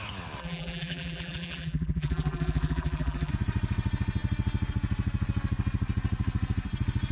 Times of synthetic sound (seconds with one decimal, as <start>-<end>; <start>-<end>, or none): 0.4-3.3

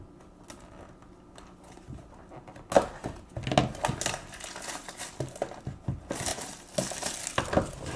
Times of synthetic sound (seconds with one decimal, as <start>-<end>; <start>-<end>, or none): none

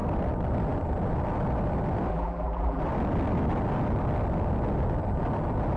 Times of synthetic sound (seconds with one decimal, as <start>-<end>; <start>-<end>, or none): 2.1-2.8